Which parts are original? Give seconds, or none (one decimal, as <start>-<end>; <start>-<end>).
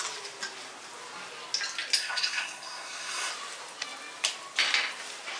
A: 0.0-2.0; 3.3-5.4